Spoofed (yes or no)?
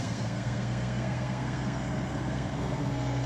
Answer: yes